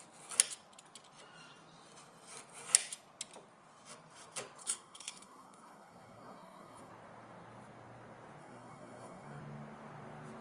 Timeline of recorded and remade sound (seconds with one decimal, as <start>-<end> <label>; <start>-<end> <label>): 0.0-4.6 recorded; 4.6-6.9 remade; 6.9-8.4 recorded; 8.4-9.4 remade; 9.4-10.4 recorded